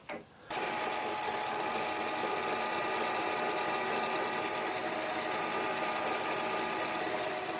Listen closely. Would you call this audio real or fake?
real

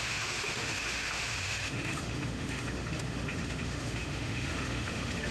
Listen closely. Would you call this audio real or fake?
fake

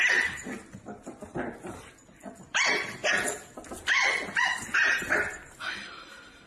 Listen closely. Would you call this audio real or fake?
real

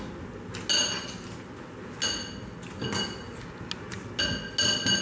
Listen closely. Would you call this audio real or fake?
real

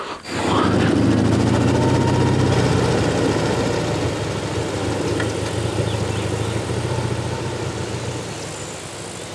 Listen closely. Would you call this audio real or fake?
real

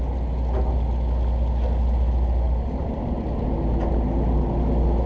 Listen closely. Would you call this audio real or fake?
real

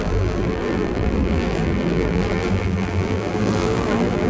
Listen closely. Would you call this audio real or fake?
fake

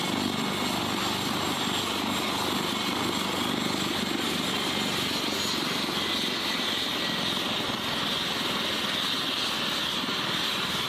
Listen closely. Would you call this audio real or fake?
real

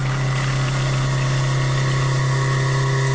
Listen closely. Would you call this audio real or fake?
real